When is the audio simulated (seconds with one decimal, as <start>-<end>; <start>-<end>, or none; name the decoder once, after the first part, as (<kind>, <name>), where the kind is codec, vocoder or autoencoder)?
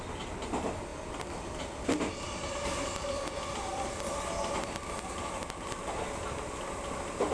none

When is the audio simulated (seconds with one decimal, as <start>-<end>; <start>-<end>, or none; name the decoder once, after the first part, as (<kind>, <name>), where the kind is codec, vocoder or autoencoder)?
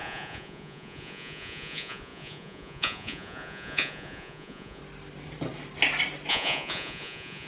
0.0-4.8 (vocoder, Vocos); 6.3-7.5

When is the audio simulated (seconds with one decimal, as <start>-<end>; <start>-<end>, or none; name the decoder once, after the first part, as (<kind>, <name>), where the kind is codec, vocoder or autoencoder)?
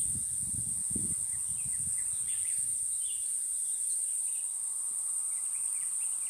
0.0-2.7 (vocoder, BigVGAN v2); 4.1-4.7; 5.3-6.3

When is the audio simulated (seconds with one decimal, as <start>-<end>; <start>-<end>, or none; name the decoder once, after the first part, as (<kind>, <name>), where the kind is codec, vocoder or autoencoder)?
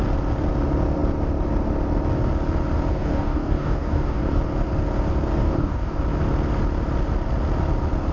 2.9-4.4 (codec, DAC); 5.4-6.0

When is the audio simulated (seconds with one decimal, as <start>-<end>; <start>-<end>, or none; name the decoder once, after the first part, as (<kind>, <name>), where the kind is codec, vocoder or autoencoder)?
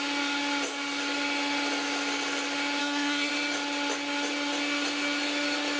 2.8-3.3 (codec, SNAC)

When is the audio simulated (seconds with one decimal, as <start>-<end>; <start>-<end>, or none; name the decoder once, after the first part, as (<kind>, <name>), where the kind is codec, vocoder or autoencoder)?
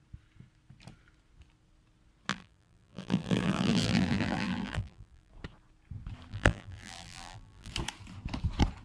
2.3-5.3 (vocoder, BigVGAN v2); 6.3-7.7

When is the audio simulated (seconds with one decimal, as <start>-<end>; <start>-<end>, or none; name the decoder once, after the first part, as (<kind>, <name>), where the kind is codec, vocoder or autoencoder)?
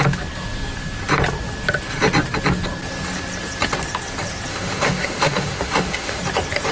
4.5-6.2 (autoencoder, DAC-VAE)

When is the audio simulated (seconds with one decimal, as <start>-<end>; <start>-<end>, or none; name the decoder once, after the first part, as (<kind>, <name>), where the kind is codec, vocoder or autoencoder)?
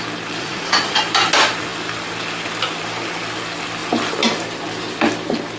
0.4-1.0 (vocoder, Vocos)